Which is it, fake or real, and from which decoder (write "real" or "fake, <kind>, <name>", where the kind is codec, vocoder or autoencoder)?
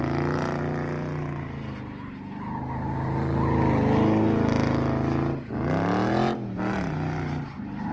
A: real